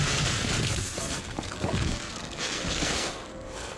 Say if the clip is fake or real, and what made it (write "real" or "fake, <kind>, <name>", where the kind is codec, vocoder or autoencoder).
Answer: fake, codec, SNAC